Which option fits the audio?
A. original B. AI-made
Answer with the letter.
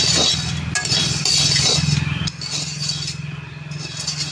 A